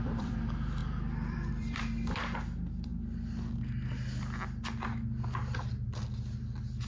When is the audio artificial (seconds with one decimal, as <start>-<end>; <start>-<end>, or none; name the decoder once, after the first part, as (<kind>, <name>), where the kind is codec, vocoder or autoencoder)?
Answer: 0.0-2.9 (vocoder, BigVGAN v2)